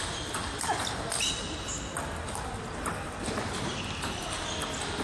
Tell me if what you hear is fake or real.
real